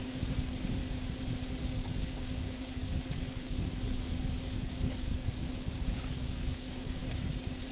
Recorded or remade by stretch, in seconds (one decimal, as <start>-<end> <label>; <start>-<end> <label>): 0.0-0.8 remade; 0.8-1.6 recorded; 1.6-7.0 remade; 7.0-7.7 recorded

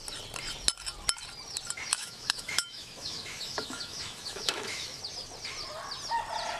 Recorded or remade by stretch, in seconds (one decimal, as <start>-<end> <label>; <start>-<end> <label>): 0.0-1.9 recorded; 1.9-5.0 remade; 5.0-6.6 recorded

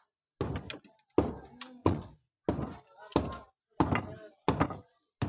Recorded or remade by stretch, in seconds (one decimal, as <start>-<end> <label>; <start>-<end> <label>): 0.0-1.8 recorded; 1.8-2.4 remade; 2.4-5.3 recorded

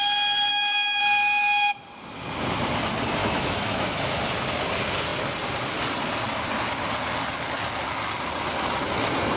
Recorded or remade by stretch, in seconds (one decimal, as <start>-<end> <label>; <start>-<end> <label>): 0.0-0.5 recorded; 0.5-1.0 remade; 1.0-3.2 recorded; 3.2-4.1 remade; 4.1-9.4 recorded

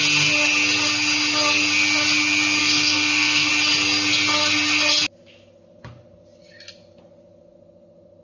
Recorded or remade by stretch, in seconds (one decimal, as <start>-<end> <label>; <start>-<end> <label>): 0.0-2.6 recorded; 2.6-3.5 remade; 3.5-8.2 recorded

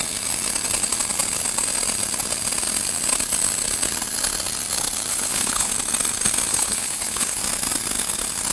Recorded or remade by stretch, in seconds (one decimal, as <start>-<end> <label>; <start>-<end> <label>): 0.0-5.1 recorded; 5.1-5.7 remade; 5.7-6.5 recorded; 6.5-7.4 remade; 7.4-8.5 recorded

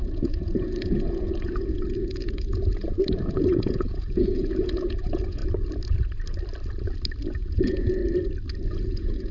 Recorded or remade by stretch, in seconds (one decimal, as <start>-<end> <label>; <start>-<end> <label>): 0.0-5.4 remade; 5.4-7.3 recorded; 7.3-8.0 remade; 8.0-8.7 recorded; 8.7-9.3 remade